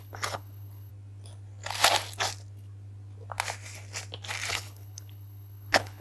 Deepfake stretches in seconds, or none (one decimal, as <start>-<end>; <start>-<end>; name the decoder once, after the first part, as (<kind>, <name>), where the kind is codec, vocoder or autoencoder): 0.0-0.9 (codec, HILCodec); 4.5-6.0